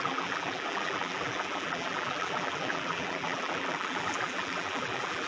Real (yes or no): no